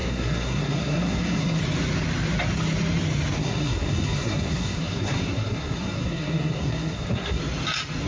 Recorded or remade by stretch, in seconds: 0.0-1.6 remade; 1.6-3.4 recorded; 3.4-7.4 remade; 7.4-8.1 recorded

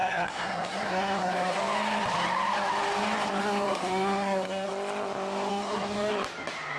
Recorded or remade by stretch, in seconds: 0.0-1.6 remade; 1.6-3.4 recorded; 3.4-4.7 remade; 4.7-5.5 recorded; 5.5-6.1 remade; 6.1-6.8 recorded

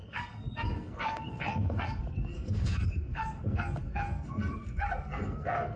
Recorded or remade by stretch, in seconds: 0.0-5.8 remade

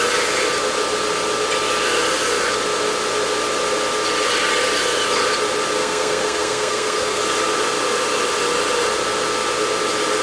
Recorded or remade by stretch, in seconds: 0.0-5.8 recorded; 5.8-7.2 remade; 7.2-10.2 recorded

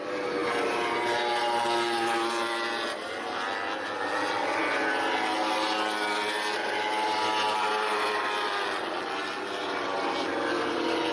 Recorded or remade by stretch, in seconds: 0.0-11.1 recorded

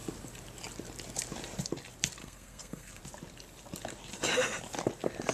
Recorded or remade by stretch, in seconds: 0.0-2.2 recorded; 2.2-3.0 remade; 3.0-5.3 recorded